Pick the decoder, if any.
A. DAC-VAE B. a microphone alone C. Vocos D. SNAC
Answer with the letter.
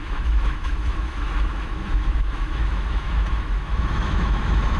A